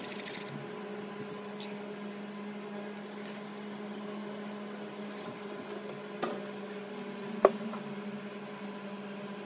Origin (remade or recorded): recorded